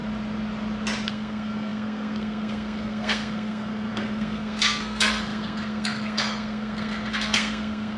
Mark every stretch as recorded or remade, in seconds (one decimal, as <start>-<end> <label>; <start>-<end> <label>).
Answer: 0.0-1.1 recorded; 1.1-8.0 remade